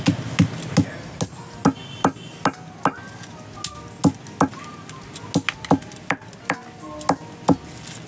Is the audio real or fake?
real